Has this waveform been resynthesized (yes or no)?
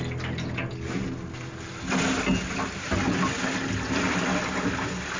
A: no